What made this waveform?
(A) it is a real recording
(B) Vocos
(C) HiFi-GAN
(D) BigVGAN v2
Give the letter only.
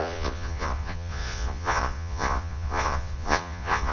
B